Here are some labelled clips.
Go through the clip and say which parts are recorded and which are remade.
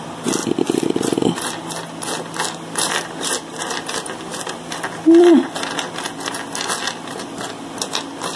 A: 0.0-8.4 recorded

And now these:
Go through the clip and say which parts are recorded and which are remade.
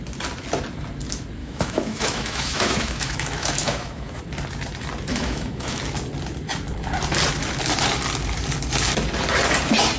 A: 0.0-1.4 recorded; 1.4-4.2 remade; 4.2-5.1 recorded; 5.1-5.8 remade; 5.8-10.0 recorded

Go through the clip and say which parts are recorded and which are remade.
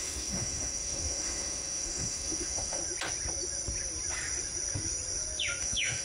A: 0.0-2.8 remade; 2.8-5.6 recorded; 5.6-6.0 remade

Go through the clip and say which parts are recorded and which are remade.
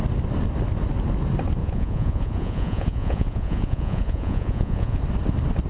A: 0.0-1.6 recorded; 1.6-5.0 remade; 5.0-5.7 recorded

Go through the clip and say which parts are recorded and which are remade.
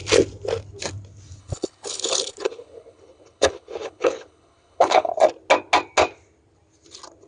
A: 0.0-1.4 recorded; 1.4-5.1 remade; 5.1-7.3 recorded